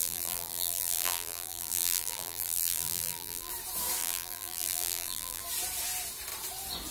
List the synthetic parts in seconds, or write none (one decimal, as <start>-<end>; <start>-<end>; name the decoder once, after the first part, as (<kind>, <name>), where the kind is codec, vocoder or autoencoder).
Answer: 0.0-3.5 (vocoder, BigVGAN v2); 4.0-5.4